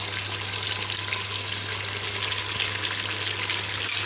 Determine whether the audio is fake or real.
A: real